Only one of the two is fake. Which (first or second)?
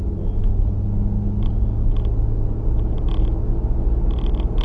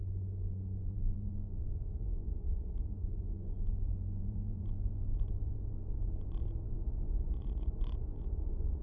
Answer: second